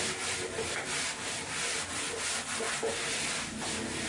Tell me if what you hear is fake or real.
real